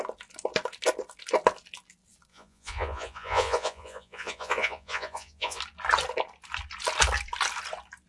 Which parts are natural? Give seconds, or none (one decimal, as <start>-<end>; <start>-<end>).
0.0-2.3; 5.6-8.1